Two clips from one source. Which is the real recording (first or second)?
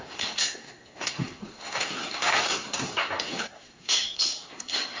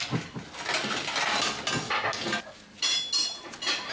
second